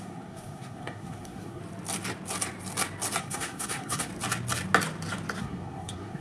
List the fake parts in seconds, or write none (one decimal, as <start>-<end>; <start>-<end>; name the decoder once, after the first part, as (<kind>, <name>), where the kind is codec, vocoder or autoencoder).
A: 0.0-1.6 (codec, SNAC); 3.2-4.1; 5.4-6.2